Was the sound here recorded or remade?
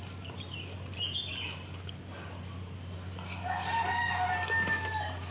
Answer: recorded